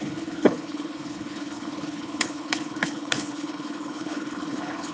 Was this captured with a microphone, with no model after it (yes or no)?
no